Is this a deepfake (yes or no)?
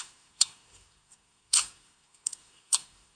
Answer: yes